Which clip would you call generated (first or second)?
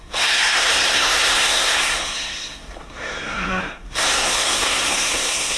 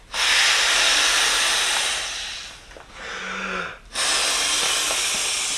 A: first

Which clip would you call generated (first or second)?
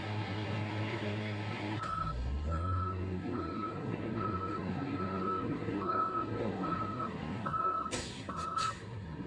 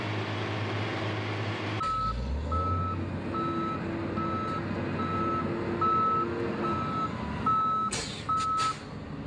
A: first